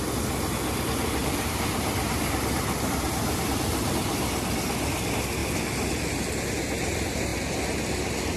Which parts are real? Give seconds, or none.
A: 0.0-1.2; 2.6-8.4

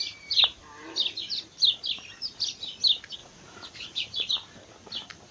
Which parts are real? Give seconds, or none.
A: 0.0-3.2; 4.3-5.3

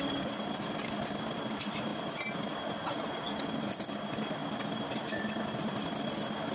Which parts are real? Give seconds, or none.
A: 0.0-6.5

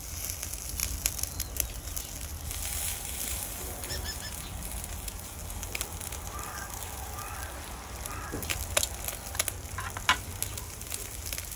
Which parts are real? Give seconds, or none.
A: 0.0-11.6